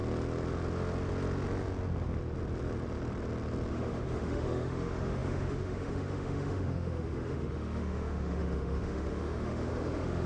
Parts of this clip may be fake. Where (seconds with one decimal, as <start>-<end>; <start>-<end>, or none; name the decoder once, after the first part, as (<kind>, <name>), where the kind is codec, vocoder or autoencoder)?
3.7-10.3 (autoencoder, DAC-VAE)